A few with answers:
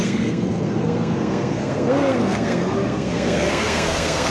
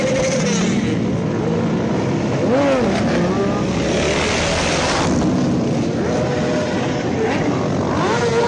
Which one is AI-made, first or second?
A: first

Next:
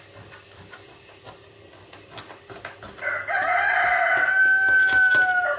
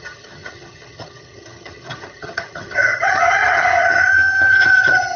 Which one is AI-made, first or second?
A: second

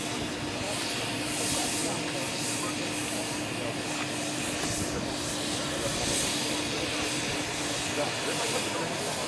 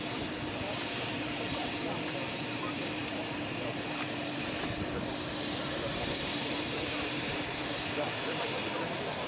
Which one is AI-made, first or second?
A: second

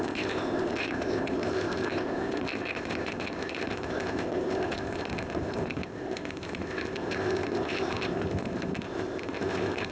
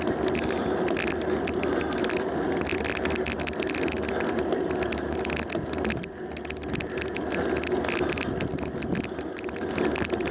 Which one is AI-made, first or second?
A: first